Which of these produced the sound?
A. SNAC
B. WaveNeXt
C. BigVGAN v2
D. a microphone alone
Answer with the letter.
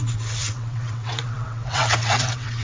B